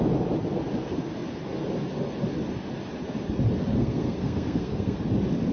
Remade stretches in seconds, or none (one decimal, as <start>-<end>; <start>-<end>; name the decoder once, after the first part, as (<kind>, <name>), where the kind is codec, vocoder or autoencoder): 3.6-5.0 (codec, SNAC)